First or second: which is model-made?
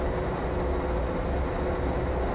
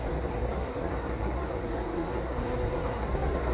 second